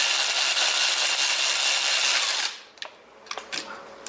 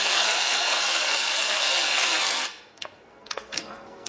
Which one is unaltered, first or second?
first